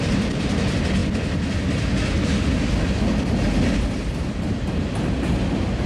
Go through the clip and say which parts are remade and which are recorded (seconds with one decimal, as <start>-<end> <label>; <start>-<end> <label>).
0.0-5.9 recorded